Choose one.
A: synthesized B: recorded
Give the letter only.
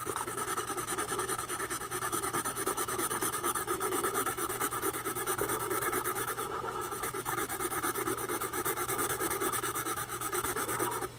A